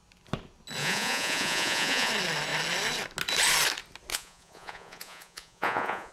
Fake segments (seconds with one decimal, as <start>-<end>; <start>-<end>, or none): 0.8-2.1; 4.1-6.1